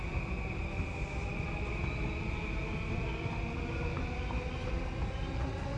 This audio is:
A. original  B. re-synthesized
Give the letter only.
A